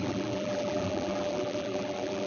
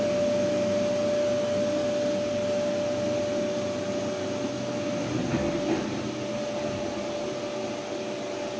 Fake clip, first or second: first